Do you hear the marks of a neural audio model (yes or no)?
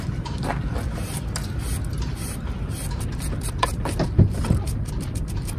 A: no